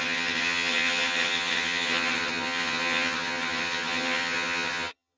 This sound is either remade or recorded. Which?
remade